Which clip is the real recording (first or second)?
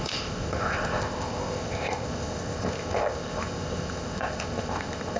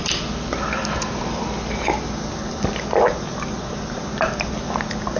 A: second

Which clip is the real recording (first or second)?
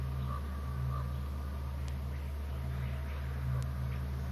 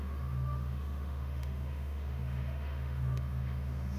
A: first